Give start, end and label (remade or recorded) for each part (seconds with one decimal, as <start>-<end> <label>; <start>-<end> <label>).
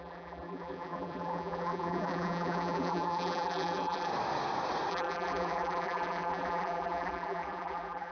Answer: 0.0-4.1 remade; 4.1-4.9 recorded; 4.9-8.1 remade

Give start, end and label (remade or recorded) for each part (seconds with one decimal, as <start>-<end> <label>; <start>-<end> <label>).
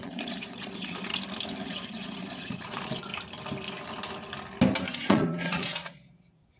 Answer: 0.0-1.1 remade; 1.1-1.7 recorded; 1.7-3.1 remade; 3.1-4.9 recorded; 4.9-6.6 remade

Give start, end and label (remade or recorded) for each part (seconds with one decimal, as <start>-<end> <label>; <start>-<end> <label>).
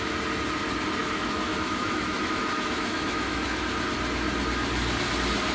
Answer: 0.0-1.0 recorded; 1.0-3.6 remade; 3.6-5.5 recorded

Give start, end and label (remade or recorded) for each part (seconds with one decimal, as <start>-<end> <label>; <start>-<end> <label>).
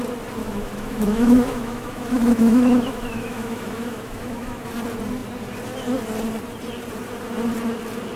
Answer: 0.0-0.4 recorded; 0.4-4.7 remade; 4.7-8.2 recorded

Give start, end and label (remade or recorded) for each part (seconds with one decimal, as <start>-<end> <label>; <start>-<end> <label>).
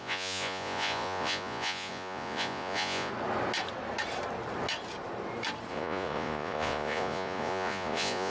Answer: 0.0-3.1 remade; 3.1-5.7 recorded; 5.7-8.3 remade